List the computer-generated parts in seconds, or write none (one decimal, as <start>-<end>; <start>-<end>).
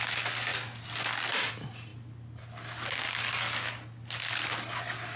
none